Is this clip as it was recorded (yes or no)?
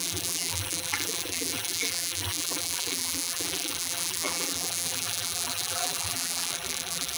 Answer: no